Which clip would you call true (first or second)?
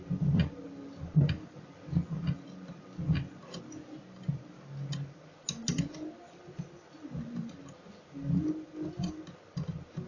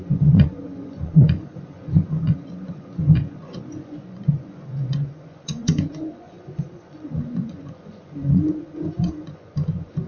first